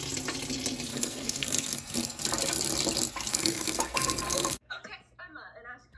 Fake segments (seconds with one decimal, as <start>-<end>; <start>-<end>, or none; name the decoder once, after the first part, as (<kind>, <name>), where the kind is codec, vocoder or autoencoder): 0.9-2.2 (codec, SNAC); 3.3-4.8